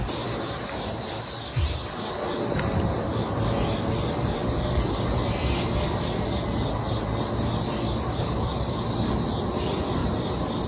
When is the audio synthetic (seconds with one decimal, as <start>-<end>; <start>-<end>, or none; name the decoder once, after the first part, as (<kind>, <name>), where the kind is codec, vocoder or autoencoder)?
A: none